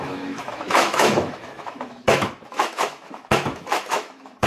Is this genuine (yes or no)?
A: no